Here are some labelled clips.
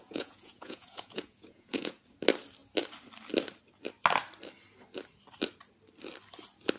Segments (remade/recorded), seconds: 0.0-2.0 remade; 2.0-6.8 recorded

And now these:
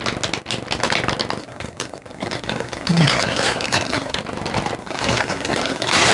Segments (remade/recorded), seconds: 0.0-1.4 recorded; 1.4-4.2 remade; 4.2-4.8 recorded; 4.8-6.1 remade

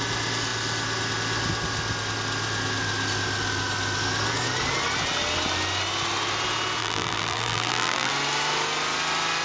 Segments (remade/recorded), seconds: 0.0-6.8 recorded; 6.8-8.1 remade; 8.1-9.4 recorded